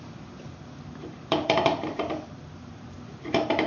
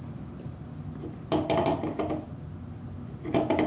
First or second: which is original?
second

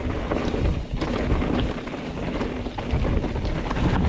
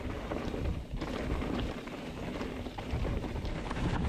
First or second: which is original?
first